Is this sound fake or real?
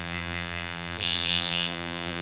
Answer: fake